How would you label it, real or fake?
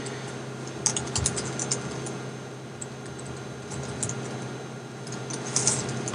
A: real